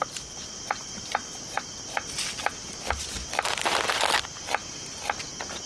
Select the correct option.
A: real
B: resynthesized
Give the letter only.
A